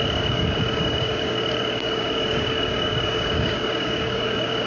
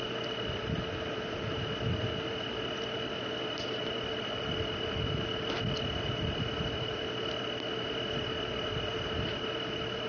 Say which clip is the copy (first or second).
first